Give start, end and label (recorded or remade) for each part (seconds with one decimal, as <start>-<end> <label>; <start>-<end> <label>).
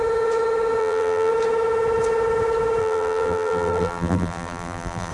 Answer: 0.0-0.8 recorded; 0.8-1.3 remade; 1.3-2.8 recorded; 2.8-5.1 remade